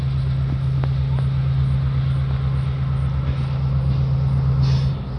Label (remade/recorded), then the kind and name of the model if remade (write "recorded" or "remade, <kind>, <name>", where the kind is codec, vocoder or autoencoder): recorded